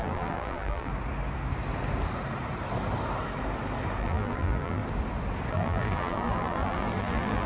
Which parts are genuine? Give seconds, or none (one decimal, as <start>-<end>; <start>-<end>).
0.9-4.0; 4.8-5.5

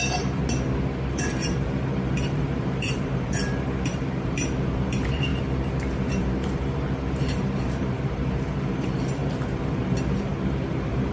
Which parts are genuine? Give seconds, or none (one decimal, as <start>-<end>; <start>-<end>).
0.4-1.1; 5.3-5.9

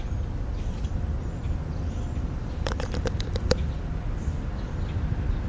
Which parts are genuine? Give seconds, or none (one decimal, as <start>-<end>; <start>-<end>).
0.0-0.5; 3.8-5.5

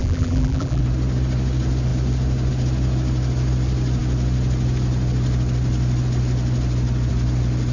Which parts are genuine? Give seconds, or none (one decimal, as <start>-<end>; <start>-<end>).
0.8-7.7

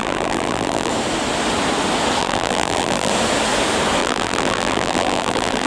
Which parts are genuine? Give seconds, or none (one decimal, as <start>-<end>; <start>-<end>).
0.9-2.2; 3.1-4.0

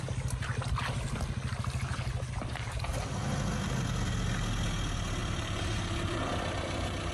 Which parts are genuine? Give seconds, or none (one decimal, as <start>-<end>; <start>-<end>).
0.0-5.2

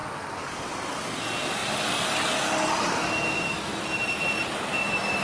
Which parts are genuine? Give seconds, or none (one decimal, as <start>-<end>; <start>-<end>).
0.0-5.2

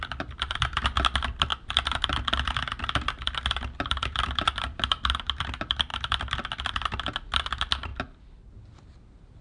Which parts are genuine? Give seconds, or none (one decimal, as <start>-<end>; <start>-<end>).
1.5-4.6; 5.9-7.3; 7.9-8.5